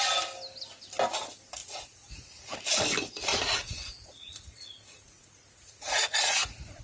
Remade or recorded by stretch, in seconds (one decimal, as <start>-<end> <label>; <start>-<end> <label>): 0.0-1.6 recorded; 1.6-2.5 remade; 2.5-3.3 recorded; 3.3-6.8 remade